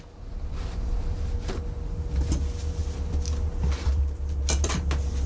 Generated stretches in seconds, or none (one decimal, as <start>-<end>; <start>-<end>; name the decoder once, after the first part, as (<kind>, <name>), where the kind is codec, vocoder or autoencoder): none